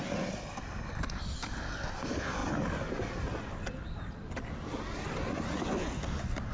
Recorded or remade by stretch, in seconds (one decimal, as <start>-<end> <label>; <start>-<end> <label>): 0.0-6.5 recorded